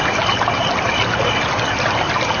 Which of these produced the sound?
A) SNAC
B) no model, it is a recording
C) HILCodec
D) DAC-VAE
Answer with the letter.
B